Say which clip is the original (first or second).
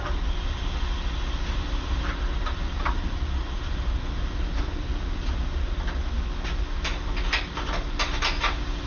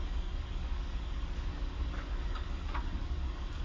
first